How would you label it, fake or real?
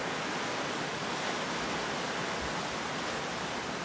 real